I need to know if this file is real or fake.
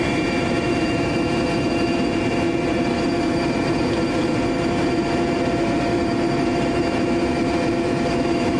fake